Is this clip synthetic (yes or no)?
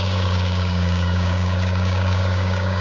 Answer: yes